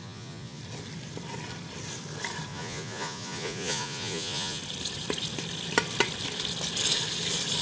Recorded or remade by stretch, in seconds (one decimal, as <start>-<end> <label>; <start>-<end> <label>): 0.0-0.6 remade; 0.6-2.5 recorded; 2.5-4.6 remade; 4.6-7.6 recorded